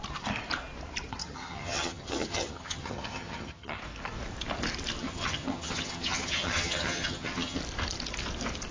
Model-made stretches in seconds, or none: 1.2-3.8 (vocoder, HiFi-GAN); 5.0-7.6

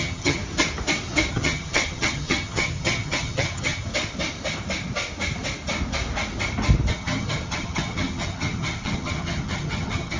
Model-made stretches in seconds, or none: 0.0-0.4 (vocoder, HiFi-GAN); 1.3-3.9; 6.9-10.2

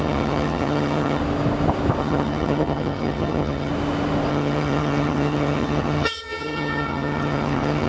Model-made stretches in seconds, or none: 0.0-1.2 (vocoder, HiFi-GAN); 2.0-3.7; 4.3-7.9